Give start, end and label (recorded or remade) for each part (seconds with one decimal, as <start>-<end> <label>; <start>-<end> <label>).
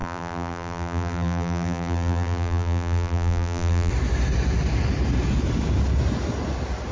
0.0-3.9 remade; 3.9-6.9 recorded